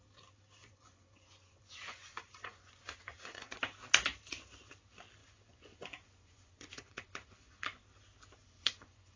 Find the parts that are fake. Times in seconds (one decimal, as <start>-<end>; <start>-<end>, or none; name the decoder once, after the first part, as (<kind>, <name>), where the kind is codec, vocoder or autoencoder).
0.6-3.6 (vocoder, Vocos); 5.2-7.8; 8.4-9.2